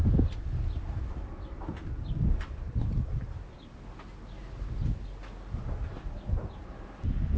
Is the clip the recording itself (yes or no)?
yes